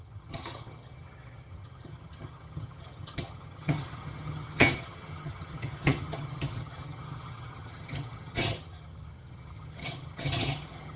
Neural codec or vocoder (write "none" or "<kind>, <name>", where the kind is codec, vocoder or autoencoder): vocoder, HiFi-GAN